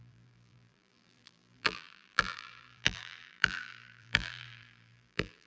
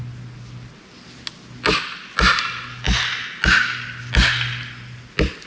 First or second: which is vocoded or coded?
first